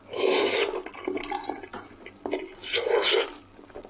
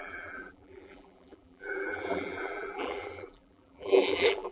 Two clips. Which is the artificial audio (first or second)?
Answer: second